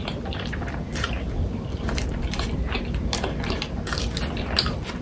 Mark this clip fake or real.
fake